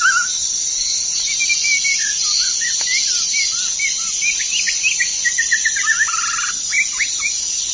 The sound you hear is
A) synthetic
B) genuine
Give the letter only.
B